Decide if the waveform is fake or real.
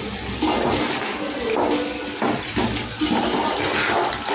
real